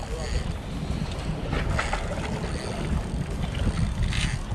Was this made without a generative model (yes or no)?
yes